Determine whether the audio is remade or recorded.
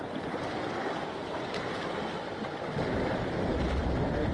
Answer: recorded